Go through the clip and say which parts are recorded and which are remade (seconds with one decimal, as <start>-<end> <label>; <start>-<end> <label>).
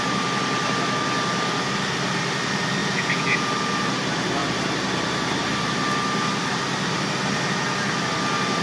0.0-2.8 recorded; 2.8-3.5 remade; 3.5-8.6 recorded